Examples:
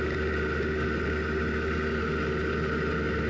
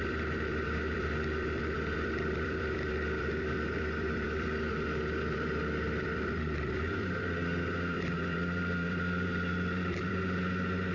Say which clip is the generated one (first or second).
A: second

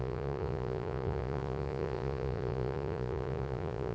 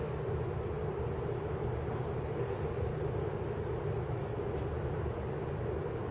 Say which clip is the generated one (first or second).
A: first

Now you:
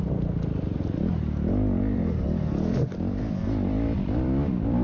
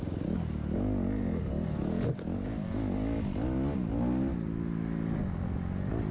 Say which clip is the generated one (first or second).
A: first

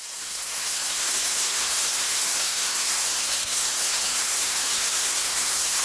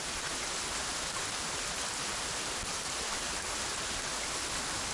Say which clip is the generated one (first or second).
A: first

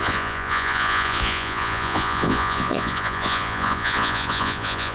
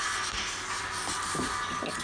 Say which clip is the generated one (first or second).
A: first